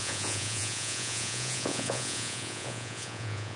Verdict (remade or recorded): remade